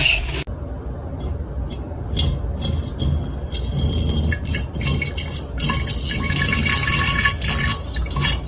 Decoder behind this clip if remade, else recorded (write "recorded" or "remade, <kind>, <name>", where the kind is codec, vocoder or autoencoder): recorded